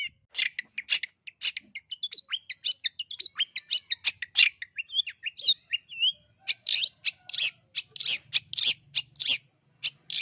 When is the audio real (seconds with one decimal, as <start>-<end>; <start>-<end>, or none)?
0.0-10.2